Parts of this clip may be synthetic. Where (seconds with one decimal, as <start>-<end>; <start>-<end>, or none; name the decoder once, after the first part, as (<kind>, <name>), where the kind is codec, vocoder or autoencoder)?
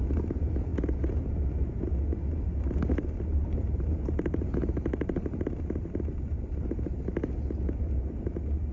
3.3-7.0 (vocoder, BigVGAN v2)